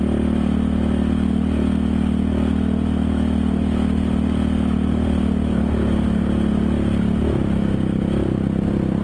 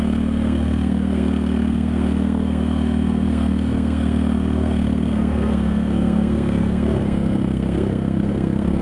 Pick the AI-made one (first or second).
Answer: second